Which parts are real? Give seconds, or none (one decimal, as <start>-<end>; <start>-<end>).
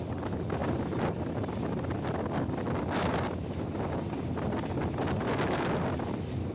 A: 0.0-6.5